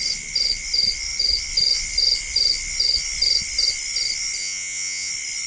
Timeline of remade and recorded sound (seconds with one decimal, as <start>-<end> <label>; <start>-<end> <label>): 0.0-4.4 recorded; 4.4-5.1 remade; 5.1-5.5 recorded